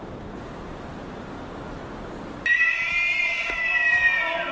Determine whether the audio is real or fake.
real